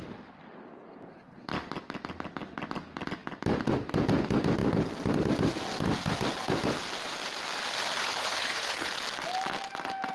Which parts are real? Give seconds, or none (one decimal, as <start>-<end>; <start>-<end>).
0.0-8.0; 8.9-10.1